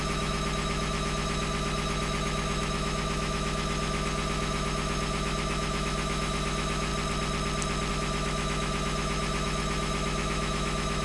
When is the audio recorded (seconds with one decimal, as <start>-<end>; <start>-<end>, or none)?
6.9-7.9